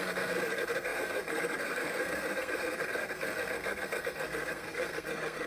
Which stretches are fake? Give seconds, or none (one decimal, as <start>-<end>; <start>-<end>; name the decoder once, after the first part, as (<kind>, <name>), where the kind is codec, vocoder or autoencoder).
0.0-5.5 (codec, SNAC)